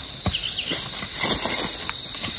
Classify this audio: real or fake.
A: real